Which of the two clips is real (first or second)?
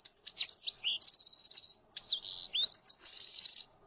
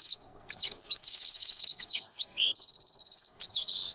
first